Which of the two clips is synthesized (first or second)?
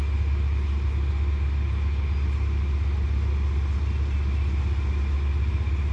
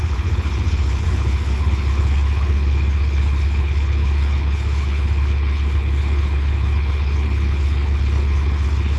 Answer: second